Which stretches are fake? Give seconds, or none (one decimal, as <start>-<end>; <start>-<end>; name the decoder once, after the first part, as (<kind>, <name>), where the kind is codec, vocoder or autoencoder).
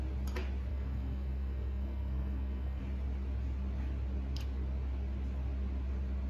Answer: 0.7-2.8 (codec, SNAC)